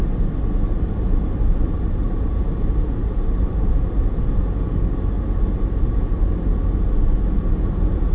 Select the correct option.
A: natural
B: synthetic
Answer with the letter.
A